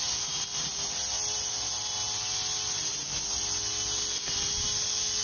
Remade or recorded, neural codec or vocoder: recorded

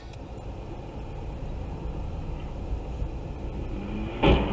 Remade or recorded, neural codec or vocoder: recorded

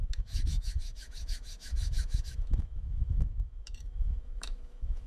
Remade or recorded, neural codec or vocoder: remade, autoencoder, DAC-VAE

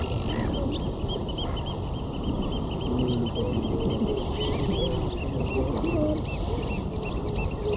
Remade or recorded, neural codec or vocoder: recorded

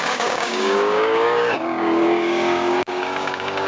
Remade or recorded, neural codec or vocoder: remade, codec, DAC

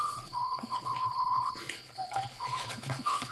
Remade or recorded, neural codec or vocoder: remade, codec, HILCodec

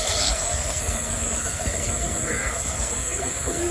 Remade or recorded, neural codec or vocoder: remade, codec, SNAC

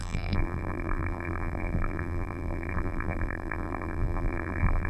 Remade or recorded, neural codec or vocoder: remade, vocoder, BigVGAN v2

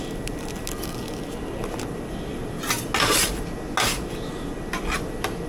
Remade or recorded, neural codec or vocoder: recorded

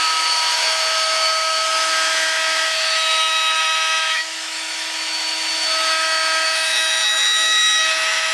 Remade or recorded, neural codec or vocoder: remade, autoencoder, DAC-VAE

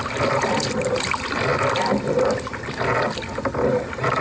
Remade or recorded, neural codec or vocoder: recorded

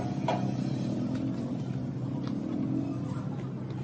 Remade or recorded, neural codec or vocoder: recorded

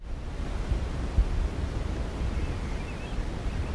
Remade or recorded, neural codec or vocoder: recorded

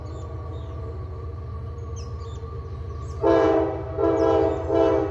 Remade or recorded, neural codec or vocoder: recorded